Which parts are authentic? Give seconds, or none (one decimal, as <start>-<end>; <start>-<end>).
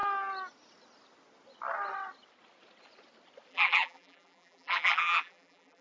0.0-3.5